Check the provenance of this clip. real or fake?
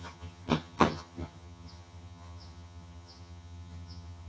fake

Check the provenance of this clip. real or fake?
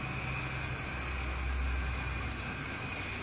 real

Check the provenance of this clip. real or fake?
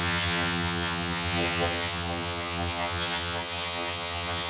fake